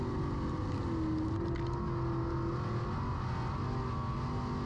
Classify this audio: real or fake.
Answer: real